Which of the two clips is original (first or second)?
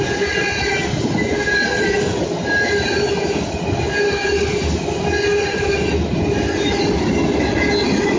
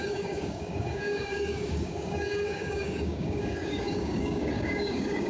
first